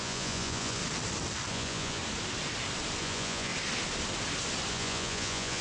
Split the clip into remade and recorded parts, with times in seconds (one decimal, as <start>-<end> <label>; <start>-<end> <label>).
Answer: 0.0-0.8 remade; 0.8-1.5 recorded; 1.5-2.0 remade; 2.0-3.0 recorded; 3.0-3.5 remade; 3.5-4.7 recorded; 4.7-5.6 remade